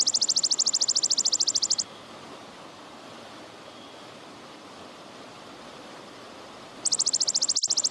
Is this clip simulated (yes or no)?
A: no